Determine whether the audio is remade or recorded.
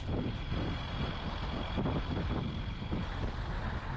recorded